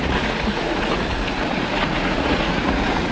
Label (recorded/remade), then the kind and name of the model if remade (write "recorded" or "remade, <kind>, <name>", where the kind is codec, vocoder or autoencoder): remade, vocoder, Vocos